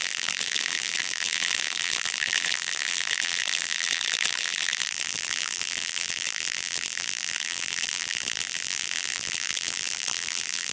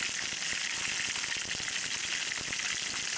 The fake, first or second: first